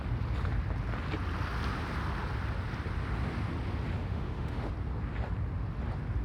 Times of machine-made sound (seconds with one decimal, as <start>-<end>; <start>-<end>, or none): 4.0-4.7